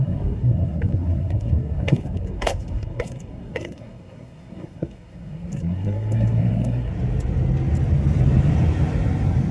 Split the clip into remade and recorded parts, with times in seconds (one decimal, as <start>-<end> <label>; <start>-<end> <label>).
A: 0.0-6.9 remade; 6.9-9.5 recorded